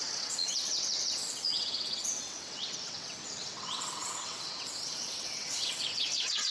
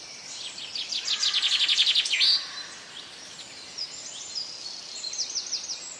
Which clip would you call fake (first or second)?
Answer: first